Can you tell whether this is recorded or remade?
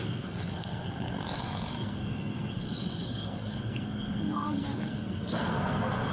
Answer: remade